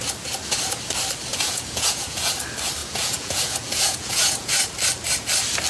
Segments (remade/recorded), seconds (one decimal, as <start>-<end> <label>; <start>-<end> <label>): 0.0-1.3 recorded; 1.3-2.3 remade; 2.3-2.8 recorded; 2.8-4.5 remade; 4.5-5.7 recorded